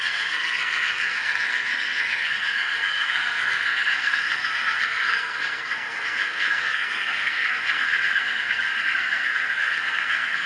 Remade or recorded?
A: remade